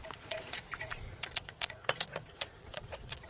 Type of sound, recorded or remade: remade